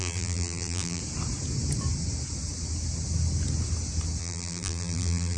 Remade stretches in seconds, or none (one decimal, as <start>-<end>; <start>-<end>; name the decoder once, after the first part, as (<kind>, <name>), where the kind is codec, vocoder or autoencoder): 0.0-1.0 (vocoder, BigVGAN v2); 4.2-5.4